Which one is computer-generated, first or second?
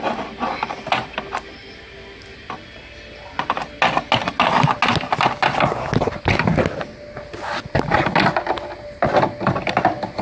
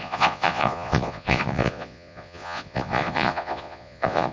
second